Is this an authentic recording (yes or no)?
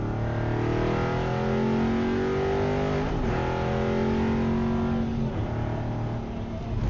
yes